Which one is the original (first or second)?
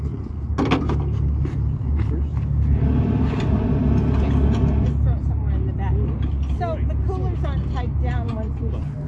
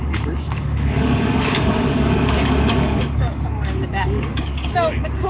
first